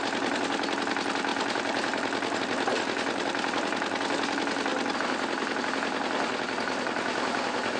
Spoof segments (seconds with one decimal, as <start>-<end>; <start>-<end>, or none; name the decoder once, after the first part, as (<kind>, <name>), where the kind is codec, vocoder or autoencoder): 1.3-2.4 (vocoder, BigVGAN v2)